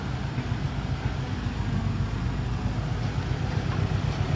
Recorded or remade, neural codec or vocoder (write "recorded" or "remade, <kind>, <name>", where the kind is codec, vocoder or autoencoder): recorded